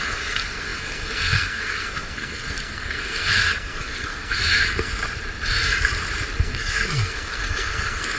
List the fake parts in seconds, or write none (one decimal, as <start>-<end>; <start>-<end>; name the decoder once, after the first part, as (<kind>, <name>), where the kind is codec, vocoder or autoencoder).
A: 0.0-4.9 (codec, SNAC); 6.4-8.2